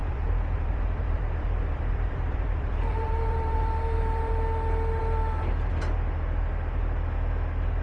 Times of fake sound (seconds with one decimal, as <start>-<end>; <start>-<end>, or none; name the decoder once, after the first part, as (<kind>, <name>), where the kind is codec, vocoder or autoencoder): 0.0-4.3 (vocoder, BigVGAN v2)